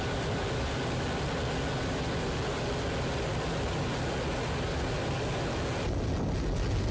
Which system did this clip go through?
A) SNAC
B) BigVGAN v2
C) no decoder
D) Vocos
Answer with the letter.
C